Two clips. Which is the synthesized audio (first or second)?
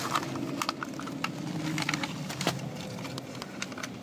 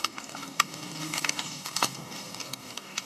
second